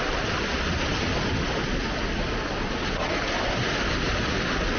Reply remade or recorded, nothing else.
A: recorded